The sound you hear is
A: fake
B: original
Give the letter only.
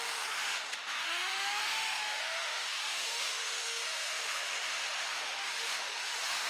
A